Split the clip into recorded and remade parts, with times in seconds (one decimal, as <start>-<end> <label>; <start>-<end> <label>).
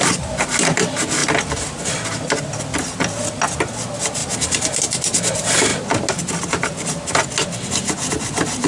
0.0-8.7 recorded